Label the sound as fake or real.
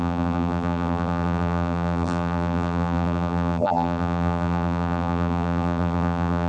fake